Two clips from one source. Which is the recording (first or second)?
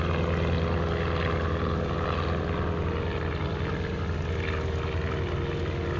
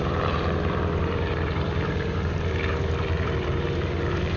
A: first